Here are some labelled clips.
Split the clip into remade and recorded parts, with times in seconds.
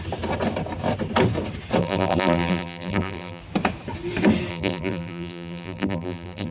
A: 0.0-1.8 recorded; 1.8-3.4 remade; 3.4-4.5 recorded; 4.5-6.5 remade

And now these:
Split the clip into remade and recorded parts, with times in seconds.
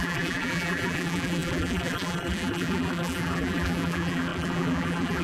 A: 0.0-5.2 remade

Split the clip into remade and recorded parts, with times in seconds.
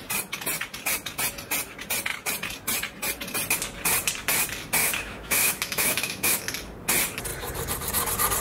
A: 0.0-4.8 recorded; 4.8-6.4 remade; 6.4-8.4 recorded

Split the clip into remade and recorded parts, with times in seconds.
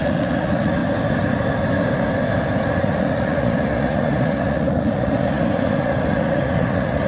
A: 0.0-0.8 remade; 0.8-2.8 recorded; 2.8-7.1 remade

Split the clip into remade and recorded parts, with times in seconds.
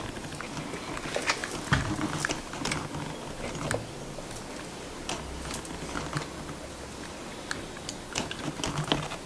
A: 0.0-9.3 recorded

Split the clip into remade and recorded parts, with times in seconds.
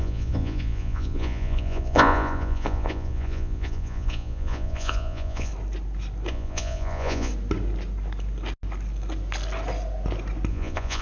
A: 0.0-5.5 remade; 5.5-6.3 recorded; 6.3-7.3 remade; 7.3-10.5 recorded; 10.5-11.0 remade